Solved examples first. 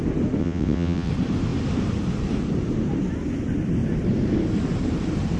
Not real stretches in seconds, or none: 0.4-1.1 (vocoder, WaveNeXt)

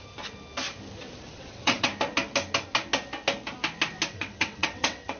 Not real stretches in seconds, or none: 1.3-1.9 (vocoder, WaveNeXt); 4.1-5.2

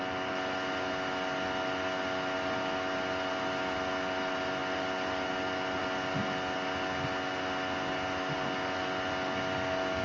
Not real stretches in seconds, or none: none